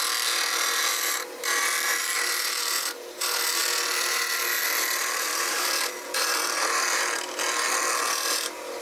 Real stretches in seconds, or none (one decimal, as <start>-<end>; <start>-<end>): 0.0-0.9; 1.4-1.9; 3.6-5.3; 7.0-8.8